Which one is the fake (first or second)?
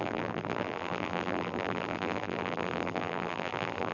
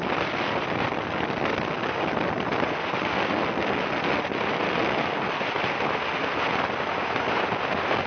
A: first